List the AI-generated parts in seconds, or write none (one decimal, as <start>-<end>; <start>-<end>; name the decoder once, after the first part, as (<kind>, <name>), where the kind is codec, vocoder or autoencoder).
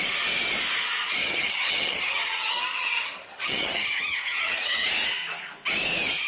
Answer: 1.2-4.9 (vocoder, HiFi-GAN)